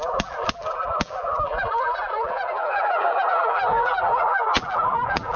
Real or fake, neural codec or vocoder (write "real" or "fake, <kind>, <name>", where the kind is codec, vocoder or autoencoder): fake, vocoder, BigVGAN v2